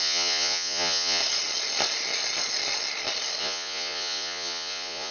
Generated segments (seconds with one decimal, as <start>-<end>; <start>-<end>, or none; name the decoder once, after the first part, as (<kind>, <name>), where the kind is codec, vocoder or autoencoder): 0.0-1.2 (vocoder, Vocos); 3.4-5.1